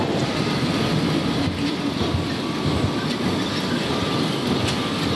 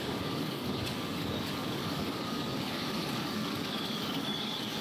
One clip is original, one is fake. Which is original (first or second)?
first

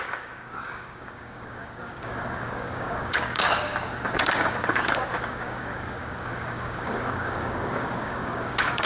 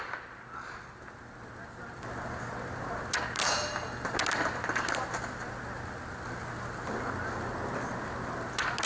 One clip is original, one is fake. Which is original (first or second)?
second